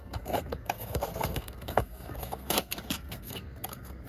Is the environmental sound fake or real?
fake